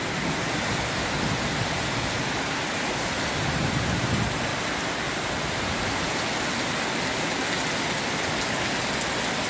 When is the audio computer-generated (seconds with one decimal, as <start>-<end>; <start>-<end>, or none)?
none

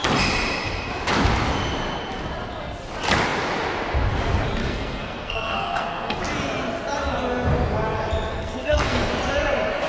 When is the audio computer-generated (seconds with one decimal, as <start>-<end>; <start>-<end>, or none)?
4.6-6.2; 8.3-9.1

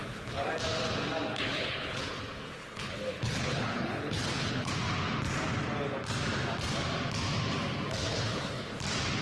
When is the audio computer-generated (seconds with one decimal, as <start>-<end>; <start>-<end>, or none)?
0.0-0.5; 1.3-4.7; 8.1-8.7